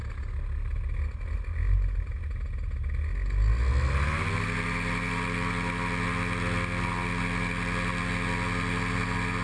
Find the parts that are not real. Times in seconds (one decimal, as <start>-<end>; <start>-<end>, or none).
none